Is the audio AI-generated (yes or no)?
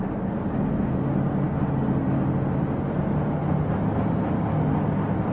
no